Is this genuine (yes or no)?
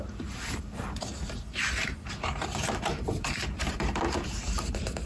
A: no